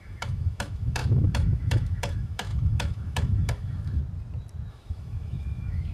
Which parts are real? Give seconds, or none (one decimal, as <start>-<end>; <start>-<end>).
4.0-4.7